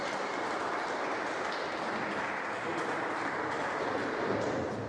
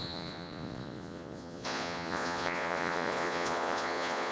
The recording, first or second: first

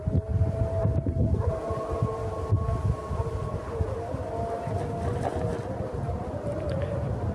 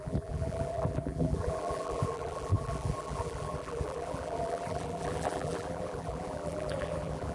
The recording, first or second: first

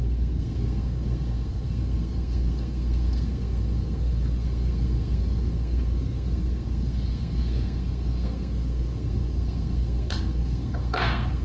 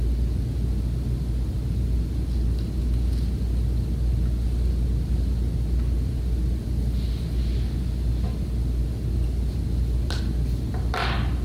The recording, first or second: second